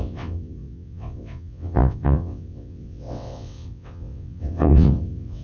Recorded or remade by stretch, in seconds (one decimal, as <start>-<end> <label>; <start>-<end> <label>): 0.0-5.4 remade